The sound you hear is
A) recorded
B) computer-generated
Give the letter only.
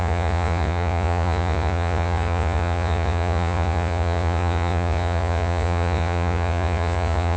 B